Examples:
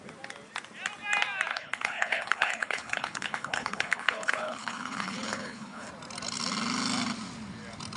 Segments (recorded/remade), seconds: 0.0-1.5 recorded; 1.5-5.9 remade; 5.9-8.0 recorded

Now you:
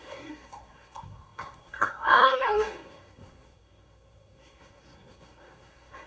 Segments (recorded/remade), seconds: 0.0-6.1 remade

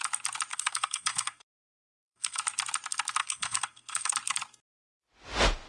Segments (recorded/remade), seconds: 0.0-0.5 recorded; 0.5-2.4 remade; 2.4-3.2 recorded; 3.2-4.1 remade; 4.1-5.7 recorded

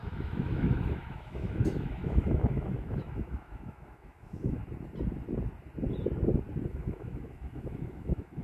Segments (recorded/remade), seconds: 0.0-4.6 remade; 4.6-6.7 recorded; 6.7-8.4 remade

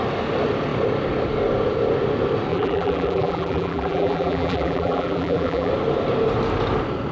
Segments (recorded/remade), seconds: 0.0-2.5 recorded; 2.5-5.7 remade; 5.7-7.1 recorded

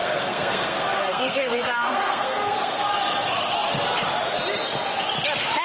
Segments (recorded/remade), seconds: 0.0-2.8 remade; 2.8-5.6 recorded

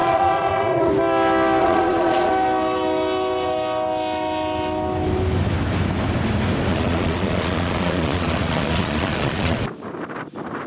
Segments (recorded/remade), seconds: 0.0-0.9 remade; 0.9-1.6 recorded; 1.6-2.3 remade; 2.3-6.7 recorded; 6.7-9.6 remade; 9.6-10.7 recorded